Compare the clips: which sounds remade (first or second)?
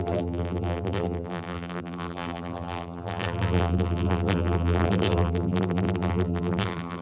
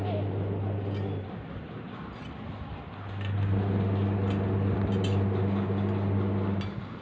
first